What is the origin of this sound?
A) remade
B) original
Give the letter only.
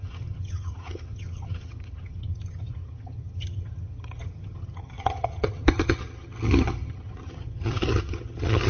A